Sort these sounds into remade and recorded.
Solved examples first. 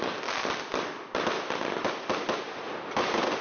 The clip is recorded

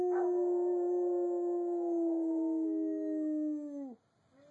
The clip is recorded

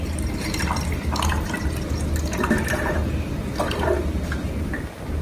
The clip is recorded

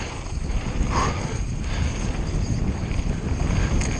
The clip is recorded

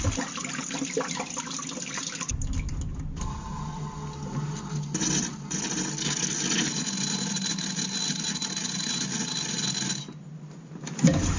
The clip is recorded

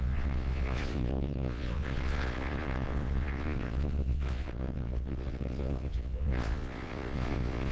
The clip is remade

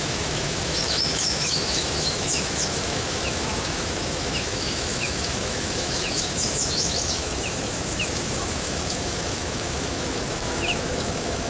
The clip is remade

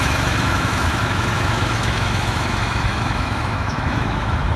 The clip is remade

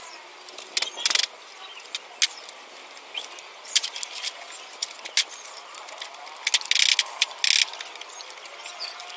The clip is recorded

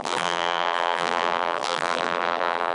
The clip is remade